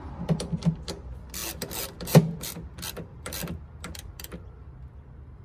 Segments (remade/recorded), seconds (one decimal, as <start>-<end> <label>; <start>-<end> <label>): 0.0-5.4 recorded